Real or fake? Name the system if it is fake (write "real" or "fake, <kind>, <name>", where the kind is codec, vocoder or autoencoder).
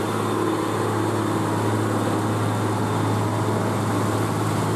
real